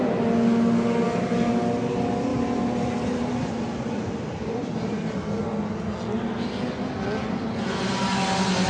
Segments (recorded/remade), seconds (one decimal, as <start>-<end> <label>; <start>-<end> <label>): 0.0-2.3 recorded; 2.3-5.4 remade; 5.4-8.7 recorded

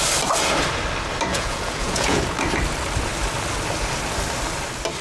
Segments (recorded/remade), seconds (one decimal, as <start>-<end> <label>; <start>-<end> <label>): 0.0-1.3 recorded; 1.3-2.2 remade; 2.2-5.0 recorded

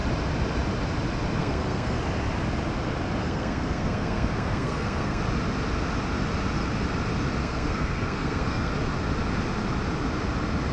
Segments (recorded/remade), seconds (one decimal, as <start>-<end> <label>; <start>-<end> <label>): 0.0-1.4 recorded; 1.4-2.0 remade; 2.0-3.2 recorded; 3.2-5.2 remade; 5.2-7.4 recorded; 7.4-8.7 remade; 8.7-10.7 recorded

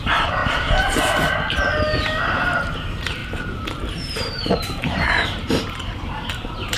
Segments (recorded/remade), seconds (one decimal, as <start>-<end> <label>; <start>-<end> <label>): 0.0-0.4 remade; 0.4-2.3 recorded; 2.3-3.2 remade; 3.2-3.9 recorded; 3.9-6.8 remade

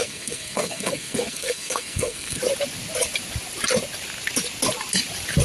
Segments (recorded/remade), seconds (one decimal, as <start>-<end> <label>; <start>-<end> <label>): 0.0-2.4 remade; 2.4-5.4 recorded

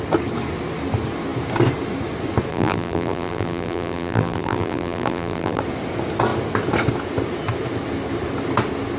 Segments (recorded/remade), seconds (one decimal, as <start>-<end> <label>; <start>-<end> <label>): 0.0-2.5 recorded; 2.5-5.6 remade; 5.6-9.0 recorded

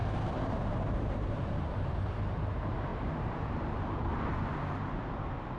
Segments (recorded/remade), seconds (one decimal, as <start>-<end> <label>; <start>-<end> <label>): 0.0-2.1 remade; 2.1-2.9 recorded; 2.9-4.9 remade; 4.9-5.6 recorded